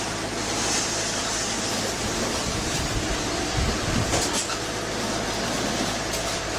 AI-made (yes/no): no